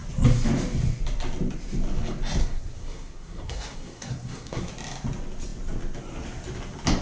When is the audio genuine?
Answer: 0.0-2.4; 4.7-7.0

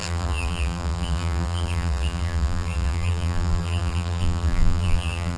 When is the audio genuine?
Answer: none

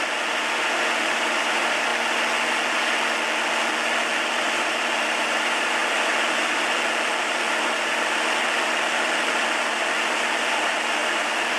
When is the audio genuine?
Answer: 1.9-4.3; 5.8-7.2